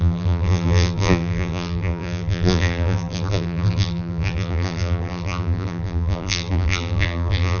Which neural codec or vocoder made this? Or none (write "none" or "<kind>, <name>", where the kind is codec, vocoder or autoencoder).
vocoder, BigVGAN v2